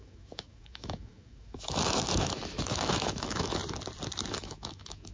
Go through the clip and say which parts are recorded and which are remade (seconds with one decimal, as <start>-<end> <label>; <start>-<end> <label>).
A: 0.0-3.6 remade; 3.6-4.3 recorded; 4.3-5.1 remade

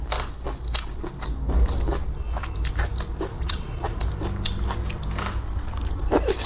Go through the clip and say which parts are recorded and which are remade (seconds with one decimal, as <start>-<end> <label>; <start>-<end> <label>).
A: 0.0-3.3 recorded; 3.3-4.0 remade; 4.0-6.5 recorded

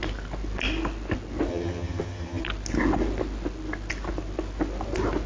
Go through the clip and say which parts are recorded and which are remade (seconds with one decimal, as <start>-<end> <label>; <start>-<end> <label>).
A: 0.0-1.5 recorded; 1.5-2.4 remade; 2.4-5.3 recorded